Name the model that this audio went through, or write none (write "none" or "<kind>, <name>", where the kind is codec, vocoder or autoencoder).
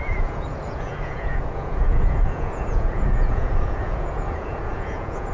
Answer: vocoder, Vocos